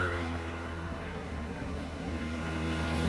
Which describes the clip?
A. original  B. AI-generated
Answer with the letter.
B